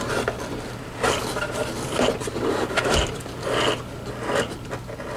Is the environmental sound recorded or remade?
recorded